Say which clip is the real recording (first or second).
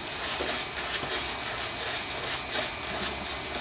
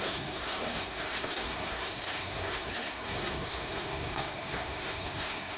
first